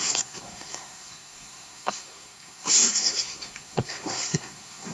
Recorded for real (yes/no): no